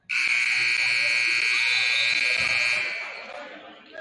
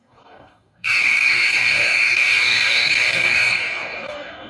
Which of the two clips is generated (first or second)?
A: second